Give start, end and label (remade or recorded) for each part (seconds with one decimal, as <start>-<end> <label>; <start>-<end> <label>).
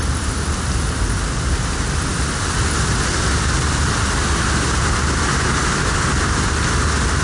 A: 0.0-7.2 recorded